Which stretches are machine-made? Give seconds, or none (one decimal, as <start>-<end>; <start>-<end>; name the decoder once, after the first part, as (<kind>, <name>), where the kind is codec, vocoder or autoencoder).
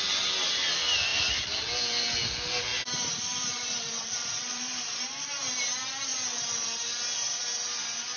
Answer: 1.1-2.1 (vocoder, BigVGAN v2); 2.7-4.5